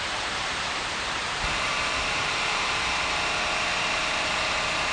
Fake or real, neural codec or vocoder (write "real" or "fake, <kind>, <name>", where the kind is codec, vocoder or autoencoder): fake, vocoder, BigVGAN v2